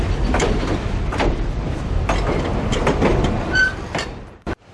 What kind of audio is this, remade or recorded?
remade